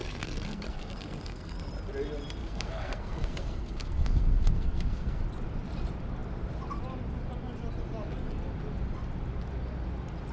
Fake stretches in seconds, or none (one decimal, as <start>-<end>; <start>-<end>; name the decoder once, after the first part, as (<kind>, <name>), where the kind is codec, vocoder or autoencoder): 0.0-1.7 (codec, SNAC); 2.4-5.2